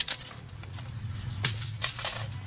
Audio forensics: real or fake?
fake